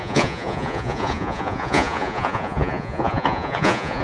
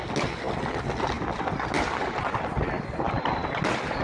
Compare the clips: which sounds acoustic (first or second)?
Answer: second